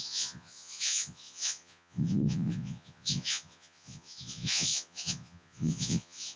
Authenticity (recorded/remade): remade